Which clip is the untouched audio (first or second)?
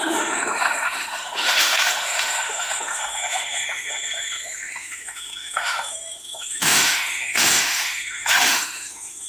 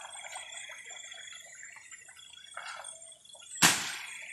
second